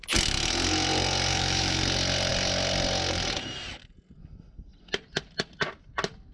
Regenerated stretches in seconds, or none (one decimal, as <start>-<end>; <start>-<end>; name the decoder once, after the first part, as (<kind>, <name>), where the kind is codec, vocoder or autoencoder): 1.3-1.8 (autoencoder, DAC-VAE)